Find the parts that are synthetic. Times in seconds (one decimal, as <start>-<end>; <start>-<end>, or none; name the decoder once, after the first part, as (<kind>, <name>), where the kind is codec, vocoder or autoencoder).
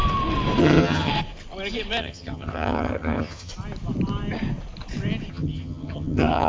0.6-1.1 (vocoder, HiFi-GAN); 2.0-3.5; 5.3-6.5